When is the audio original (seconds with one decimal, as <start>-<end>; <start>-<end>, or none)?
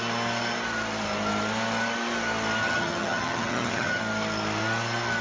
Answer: 0.0-2.6; 4.0-5.2